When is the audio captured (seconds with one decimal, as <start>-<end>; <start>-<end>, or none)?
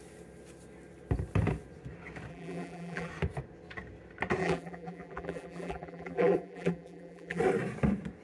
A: 0.0-2.3; 3.1-4.4; 7.4-8.2